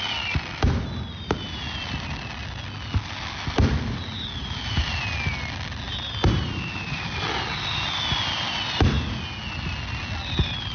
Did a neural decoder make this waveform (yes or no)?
no